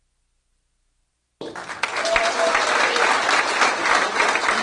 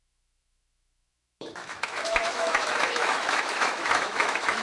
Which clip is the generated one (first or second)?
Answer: second